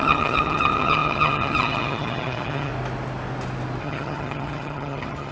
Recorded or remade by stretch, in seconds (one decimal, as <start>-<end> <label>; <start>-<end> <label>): 0.0-2.7 remade; 2.7-3.8 recorded; 3.8-5.3 remade